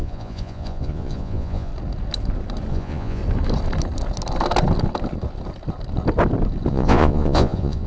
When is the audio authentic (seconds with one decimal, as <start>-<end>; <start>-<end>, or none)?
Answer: 1.7-2.7; 3.2-6.7